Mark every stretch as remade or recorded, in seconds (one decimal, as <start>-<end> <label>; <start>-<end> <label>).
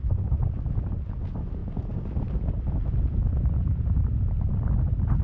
0.0-5.2 recorded